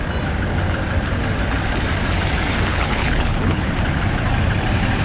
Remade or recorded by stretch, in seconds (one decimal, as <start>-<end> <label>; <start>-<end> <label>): 0.0-2.7 recorded; 2.7-3.7 remade; 3.7-5.0 recorded